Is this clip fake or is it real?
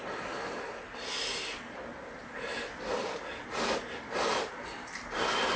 real